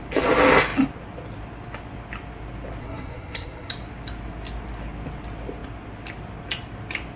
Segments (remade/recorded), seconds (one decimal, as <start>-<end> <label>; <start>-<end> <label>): 0.0-2.8 recorded; 2.8-3.7 remade; 3.7-7.2 recorded